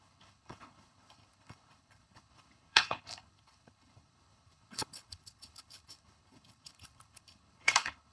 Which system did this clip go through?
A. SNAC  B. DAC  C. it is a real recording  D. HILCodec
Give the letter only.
D